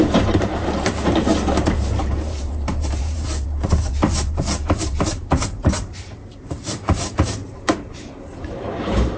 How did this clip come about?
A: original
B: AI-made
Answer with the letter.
B